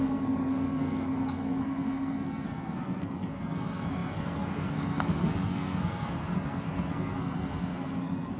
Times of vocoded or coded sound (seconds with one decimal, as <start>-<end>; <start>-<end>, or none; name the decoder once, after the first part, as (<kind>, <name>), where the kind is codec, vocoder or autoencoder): 0.0-8.4 (codec, SNAC)